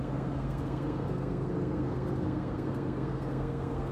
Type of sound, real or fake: fake